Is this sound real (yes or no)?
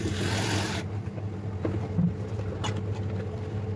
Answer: yes